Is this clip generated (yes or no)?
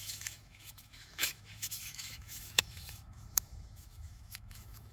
yes